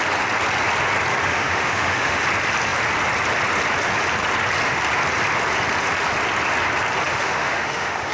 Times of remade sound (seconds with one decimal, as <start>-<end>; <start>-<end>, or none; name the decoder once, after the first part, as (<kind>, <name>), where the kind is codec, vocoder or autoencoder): 1.3-2.2 (autoencoder, DAC-VAE); 7.1-8.1